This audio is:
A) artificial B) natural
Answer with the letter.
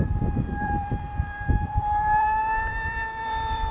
A